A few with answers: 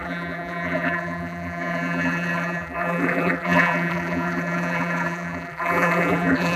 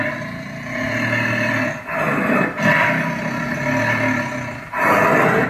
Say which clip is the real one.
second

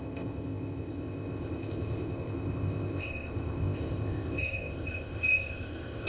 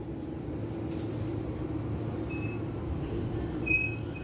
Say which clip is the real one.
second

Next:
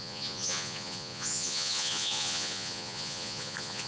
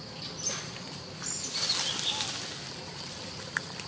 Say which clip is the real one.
second